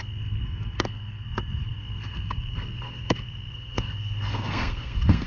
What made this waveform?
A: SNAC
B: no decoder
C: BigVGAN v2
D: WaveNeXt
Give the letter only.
A